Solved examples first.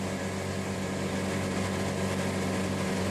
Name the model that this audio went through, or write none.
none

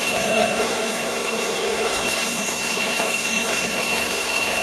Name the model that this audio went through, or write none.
codec, SNAC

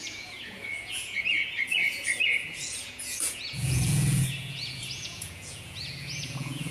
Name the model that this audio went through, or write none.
vocoder, Vocos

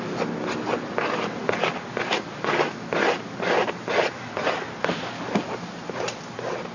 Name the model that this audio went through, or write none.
none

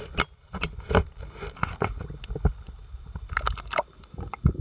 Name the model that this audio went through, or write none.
none